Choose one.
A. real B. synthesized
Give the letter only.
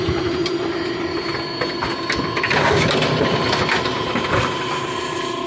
A